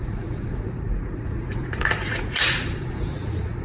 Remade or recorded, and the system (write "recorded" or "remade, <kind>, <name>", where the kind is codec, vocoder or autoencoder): remade, vocoder, Vocos